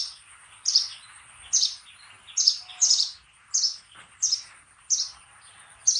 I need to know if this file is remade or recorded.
recorded